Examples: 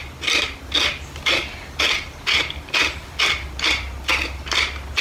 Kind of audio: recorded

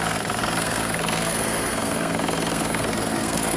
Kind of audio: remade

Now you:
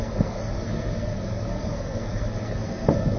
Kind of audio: remade